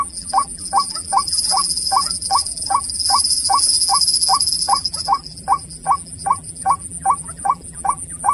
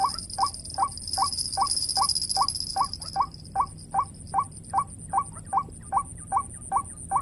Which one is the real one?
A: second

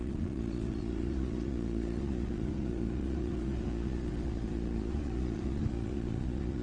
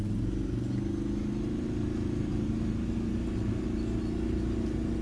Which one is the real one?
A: second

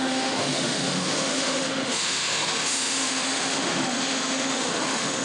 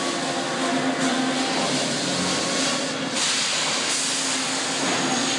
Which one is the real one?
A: second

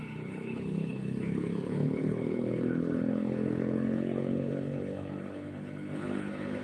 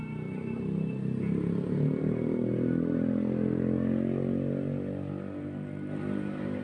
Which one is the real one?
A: second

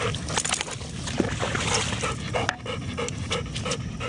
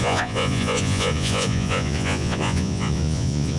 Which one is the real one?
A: first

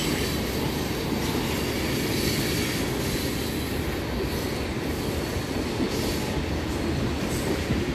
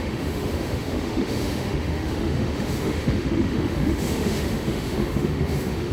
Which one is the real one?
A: first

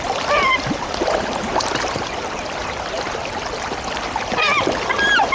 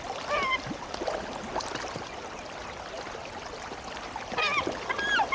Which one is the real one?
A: second